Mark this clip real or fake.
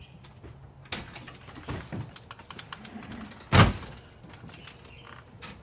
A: real